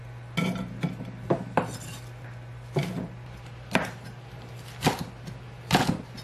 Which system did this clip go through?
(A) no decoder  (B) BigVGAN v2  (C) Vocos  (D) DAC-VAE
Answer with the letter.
A